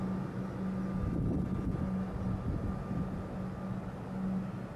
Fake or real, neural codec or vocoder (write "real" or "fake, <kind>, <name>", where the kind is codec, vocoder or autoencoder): real